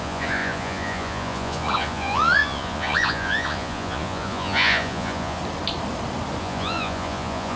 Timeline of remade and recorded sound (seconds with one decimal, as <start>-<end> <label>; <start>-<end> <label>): 0.0-5.4 remade; 5.4-6.4 recorded; 6.4-7.6 remade